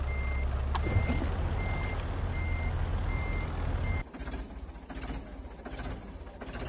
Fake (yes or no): no